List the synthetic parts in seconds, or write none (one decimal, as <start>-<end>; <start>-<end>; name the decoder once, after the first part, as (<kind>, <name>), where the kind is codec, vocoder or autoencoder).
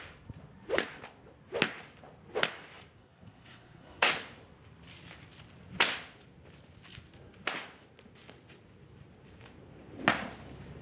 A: 3.0-4.1 (codec, SNAC)